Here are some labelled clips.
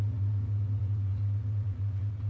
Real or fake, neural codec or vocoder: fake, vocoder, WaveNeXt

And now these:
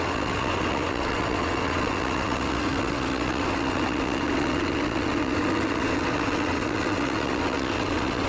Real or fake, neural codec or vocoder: fake, vocoder, WaveNeXt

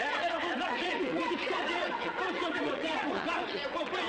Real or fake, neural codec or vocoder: fake, vocoder, WaveNeXt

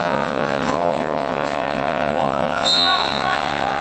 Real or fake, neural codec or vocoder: fake, vocoder, WaveNeXt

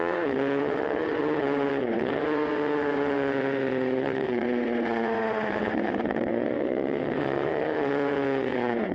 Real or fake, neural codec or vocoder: fake, vocoder, WaveNeXt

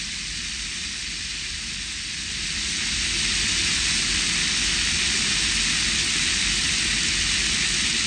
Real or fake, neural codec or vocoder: real